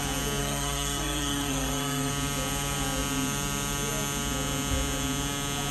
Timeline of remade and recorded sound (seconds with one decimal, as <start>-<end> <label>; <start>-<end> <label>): 0.0-0.4 recorded; 0.4-2.1 remade; 2.1-5.7 recorded